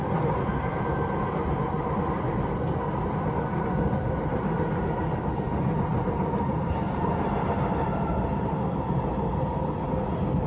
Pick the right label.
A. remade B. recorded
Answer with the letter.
B